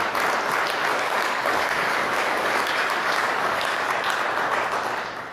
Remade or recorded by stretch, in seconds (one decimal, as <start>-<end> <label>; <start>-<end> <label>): 0.0-0.9 recorded; 0.9-4.1 remade; 4.1-5.3 recorded